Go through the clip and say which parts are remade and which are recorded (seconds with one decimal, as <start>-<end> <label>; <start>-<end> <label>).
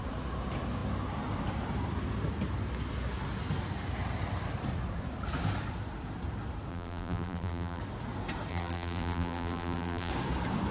0.0-6.7 recorded; 6.7-7.8 remade; 7.8-8.5 recorded; 8.5-10.1 remade; 10.1-10.7 recorded